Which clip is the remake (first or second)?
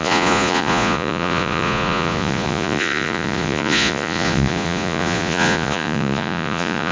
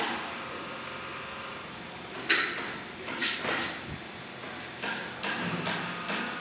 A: first